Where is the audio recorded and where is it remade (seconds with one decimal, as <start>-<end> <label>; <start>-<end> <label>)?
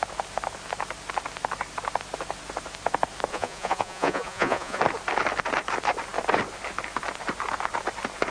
0.0-3.3 recorded; 3.3-4.8 remade; 4.8-8.3 recorded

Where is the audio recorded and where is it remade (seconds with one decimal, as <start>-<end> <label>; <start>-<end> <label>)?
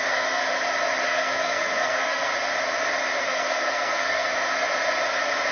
0.0-0.4 remade; 0.4-1.0 recorded; 1.0-2.3 remade; 2.3-3.2 recorded; 3.2-4.3 remade; 4.3-5.5 recorded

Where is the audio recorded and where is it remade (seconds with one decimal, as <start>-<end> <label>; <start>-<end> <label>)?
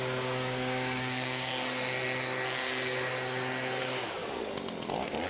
0.0-1.5 remade; 1.5-3.8 recorded; 3.8-4.2 remade; 4.2-5.3 recorded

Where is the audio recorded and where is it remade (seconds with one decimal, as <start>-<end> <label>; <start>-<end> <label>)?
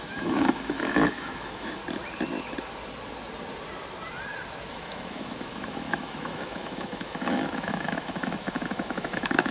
0.0-1.8 remade; 1.8-4.7 recorded; 4.7-9.5 remade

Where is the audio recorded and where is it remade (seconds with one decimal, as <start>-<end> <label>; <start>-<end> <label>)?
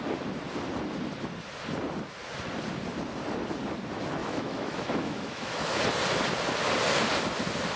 0.0-4.2 recorded; 4.2-5.8 remade; 5.8-7.8 recorded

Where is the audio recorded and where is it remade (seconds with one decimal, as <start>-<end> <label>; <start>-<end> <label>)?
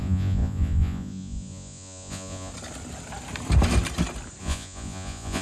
0.0-2.5 remade; 2.5-4.4 recorded; 4.4-5.4 remade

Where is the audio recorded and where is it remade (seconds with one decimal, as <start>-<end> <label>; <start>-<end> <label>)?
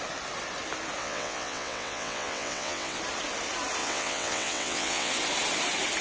0.0-1.0 recorded; 1.0-3.0 remade; 3.0-3.8 recorded; 3.8-5.1 remade; 5.1-6.0 recorded